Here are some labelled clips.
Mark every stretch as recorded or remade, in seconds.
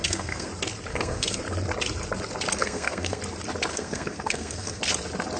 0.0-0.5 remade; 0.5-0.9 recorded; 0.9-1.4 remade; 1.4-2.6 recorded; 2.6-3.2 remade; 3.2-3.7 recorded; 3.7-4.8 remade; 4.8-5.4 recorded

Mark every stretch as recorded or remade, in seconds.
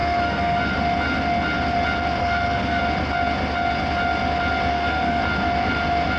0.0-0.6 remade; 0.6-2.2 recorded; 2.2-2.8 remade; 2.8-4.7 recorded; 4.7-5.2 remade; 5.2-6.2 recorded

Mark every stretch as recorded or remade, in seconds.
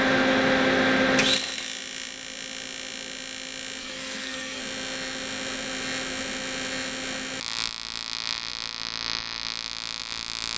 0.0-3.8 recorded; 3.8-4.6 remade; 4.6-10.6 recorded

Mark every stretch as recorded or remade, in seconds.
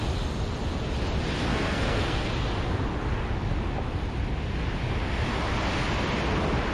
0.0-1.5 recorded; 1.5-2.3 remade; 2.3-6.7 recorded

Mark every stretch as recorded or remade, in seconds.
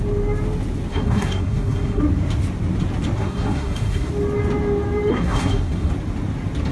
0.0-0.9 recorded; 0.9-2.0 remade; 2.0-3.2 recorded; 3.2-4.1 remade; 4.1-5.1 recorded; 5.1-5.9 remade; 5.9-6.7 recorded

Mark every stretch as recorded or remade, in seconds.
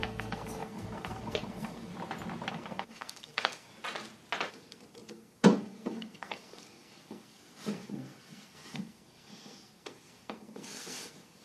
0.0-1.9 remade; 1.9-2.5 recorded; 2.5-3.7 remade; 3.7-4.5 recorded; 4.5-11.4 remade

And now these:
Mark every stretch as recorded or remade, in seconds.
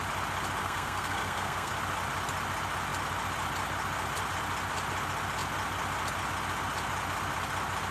0.0-0.6 recorded; 0.6-1.7 remade; 1.7-7.9 recorded